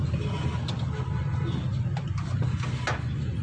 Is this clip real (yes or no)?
yes